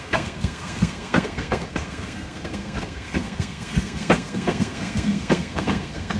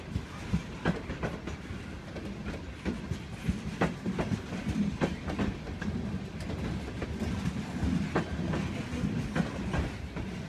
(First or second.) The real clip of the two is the second